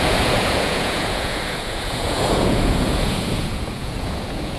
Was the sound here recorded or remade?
remade